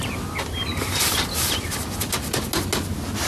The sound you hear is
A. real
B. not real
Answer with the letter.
A